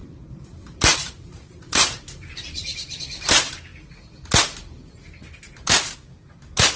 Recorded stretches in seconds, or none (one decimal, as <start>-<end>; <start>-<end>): 3.0-6.8